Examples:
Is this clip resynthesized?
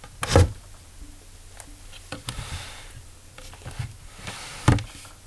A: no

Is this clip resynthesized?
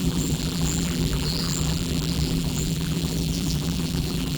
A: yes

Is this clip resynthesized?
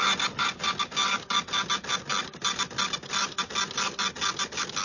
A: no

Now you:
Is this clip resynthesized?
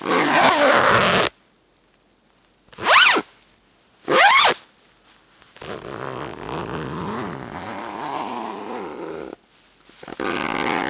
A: no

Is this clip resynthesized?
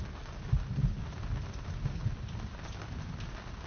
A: no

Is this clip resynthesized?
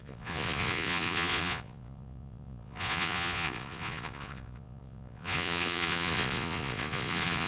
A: yes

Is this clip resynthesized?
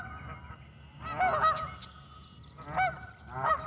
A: no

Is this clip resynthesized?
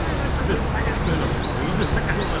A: no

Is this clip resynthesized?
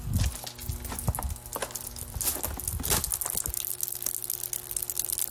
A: no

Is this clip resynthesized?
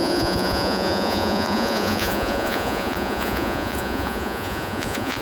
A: yes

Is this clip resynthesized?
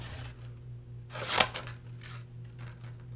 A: no